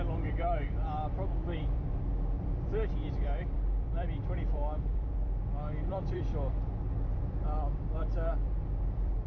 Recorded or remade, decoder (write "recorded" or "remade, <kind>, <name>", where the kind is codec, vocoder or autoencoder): remade, vocoder, BigVGAN v2